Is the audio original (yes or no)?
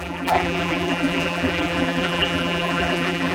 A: no